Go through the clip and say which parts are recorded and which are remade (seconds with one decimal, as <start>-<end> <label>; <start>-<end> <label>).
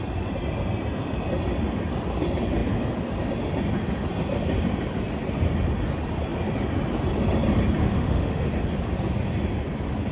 0.0-7.8 recorded; 7.8-8.5 remade; 8.5-10.1 recorded